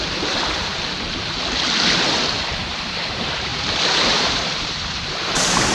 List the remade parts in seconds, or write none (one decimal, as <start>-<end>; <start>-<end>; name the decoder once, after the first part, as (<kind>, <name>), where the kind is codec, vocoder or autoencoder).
0.0-0.7 (vocoder, BigVGAN v2); 2.7-5.7